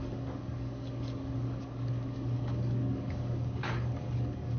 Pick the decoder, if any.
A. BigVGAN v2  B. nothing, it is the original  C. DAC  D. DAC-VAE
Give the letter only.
C